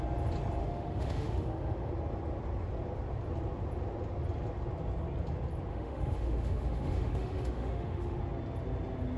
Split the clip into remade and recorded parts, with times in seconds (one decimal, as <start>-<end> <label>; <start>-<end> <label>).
0.0-0.6 recorded; 0.6-1.9 remade; 1.9-5.7 recorded; 5.7-8.2 remade; 8.2-9.2 recorded